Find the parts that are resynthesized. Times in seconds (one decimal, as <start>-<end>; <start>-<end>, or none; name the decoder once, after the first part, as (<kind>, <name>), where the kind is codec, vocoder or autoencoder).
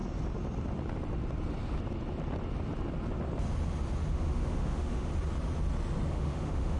4.1-5.1 (autoencoder, DAC-VAE); 6.1-6.8